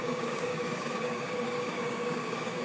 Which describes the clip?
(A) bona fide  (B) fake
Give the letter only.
B